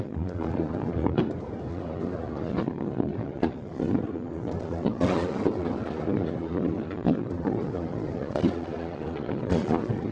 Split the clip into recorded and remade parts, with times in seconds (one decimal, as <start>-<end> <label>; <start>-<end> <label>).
0.0-1.2 remade; 1.2-1.7 recorded; 1.7-10.1 remade

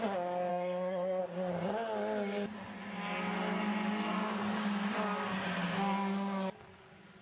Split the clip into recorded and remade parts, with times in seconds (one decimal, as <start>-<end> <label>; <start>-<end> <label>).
0.0-0.5 recorded; 0.5-1.2 remade; 1.2-7.2 recorded

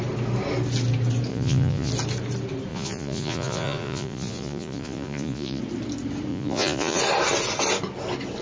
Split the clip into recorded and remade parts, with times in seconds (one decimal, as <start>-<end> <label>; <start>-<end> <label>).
0.0-1.3 recorded; 1.3-1.9 remade; 1.9-2.7 recorded; 2.7-5.6 remade; 5.6-6.3 recorded; 6.3-7.0 remade; 7.0-8.4 recorded

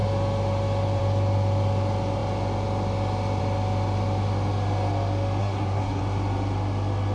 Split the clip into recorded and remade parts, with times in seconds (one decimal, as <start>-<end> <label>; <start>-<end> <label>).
0.0-5.4 recorded; 5.4-6.0 remade; 6.0-7.1 recorded